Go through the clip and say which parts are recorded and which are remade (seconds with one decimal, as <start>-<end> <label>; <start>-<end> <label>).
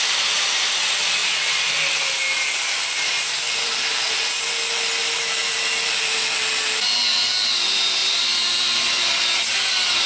0.0-1.2 recorded; 1.2-4.3 remade; 4.3-5.4 recorded; 5.4-6.5 remade; 6.5-8.0 recorded; 8.0-8.9 remade; 8.9-10.1 recorded